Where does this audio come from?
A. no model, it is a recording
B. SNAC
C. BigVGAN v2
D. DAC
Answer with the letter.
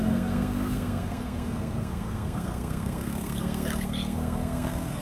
B